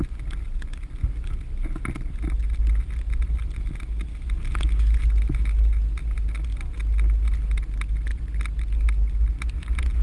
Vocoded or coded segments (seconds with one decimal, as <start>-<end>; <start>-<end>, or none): none